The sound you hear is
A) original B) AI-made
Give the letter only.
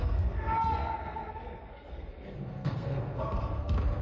B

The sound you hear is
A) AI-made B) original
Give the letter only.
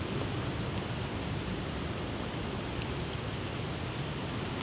B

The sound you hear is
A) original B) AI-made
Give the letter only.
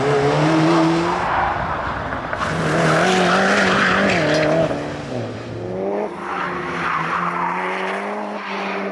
A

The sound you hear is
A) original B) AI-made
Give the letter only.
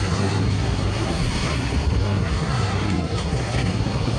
B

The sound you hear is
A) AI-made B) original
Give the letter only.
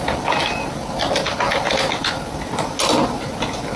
B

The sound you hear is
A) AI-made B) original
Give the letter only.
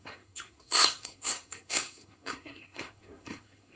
A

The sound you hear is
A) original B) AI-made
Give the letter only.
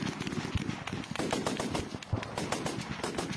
A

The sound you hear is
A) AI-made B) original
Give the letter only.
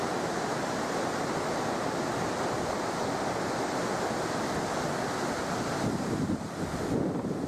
B